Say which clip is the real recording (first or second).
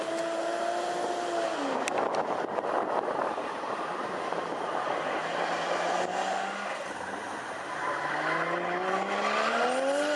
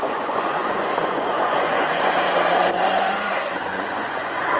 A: first